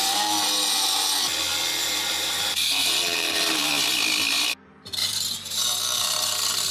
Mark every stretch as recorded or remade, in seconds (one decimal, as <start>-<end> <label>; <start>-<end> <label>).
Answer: 0.0-1.8 recorded; 1.8-3.7 remade; 3.7-5.0 recorded; 5.0-5.6 remade; 5.6-6.7 recorded